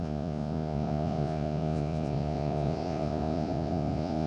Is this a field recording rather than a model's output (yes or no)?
no